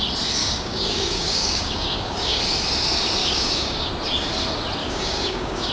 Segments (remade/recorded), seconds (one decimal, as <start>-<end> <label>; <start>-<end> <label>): 0.0-0.4 recorded; 0.4-2.4 remade; 2.4-3.2 recorded; 3.2-3.9 remade; 3.9-4.8 recorded; 4.8-5.7 remade